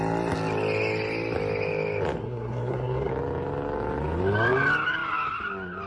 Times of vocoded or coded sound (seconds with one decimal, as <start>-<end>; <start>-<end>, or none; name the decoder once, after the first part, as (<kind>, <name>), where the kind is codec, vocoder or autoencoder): 2.2-3.1 (codec, SNAC)

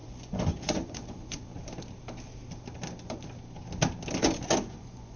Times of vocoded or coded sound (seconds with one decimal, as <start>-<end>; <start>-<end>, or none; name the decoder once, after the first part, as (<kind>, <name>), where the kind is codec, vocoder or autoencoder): 0.0-1.5 (vocoder, Vocos); 4.6-5.2

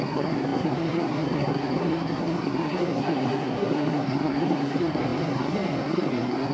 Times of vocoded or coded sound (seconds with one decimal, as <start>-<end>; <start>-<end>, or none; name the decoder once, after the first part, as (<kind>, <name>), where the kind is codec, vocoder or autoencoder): 0.0-6.5 (codec, SNAC)